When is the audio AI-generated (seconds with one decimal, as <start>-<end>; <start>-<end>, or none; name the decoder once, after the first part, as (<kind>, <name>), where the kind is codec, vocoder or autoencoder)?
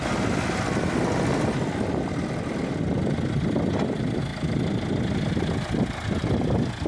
none